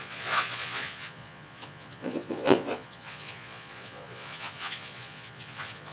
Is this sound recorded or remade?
remade